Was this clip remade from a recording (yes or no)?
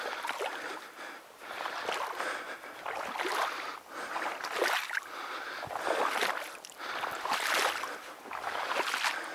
no